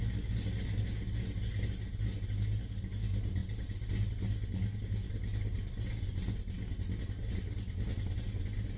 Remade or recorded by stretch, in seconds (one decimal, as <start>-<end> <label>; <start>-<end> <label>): 0.0-8.8 recorded